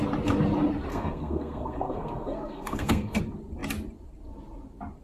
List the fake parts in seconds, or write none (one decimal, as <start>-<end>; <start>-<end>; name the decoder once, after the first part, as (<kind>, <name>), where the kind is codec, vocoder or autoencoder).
0.9-3.2 (codec, SNAC)